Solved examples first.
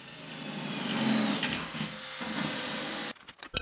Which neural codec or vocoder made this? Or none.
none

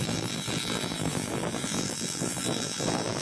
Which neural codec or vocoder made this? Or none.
vocoder, BigVGAN v2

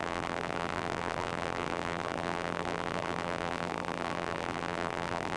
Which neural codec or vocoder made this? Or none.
vocoder, BigVGAN v2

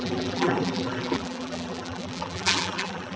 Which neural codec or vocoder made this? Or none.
vocoder, BigVGAN v2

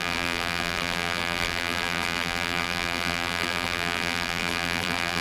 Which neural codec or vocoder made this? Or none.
vocoder, BigVGAN v2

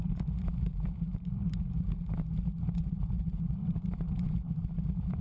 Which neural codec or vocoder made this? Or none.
vocoder, BigVGAN v2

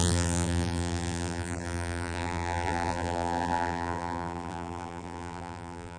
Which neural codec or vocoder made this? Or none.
vocoder, BigVGAN v2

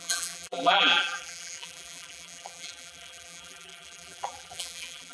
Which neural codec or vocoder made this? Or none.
vocoder, BigVGAN v2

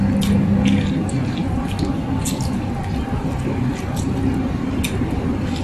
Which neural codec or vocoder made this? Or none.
none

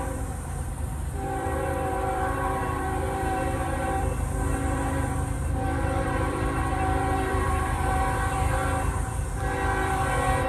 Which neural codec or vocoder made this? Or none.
vocoder, BigVGAN v2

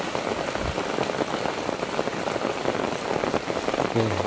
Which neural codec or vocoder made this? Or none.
none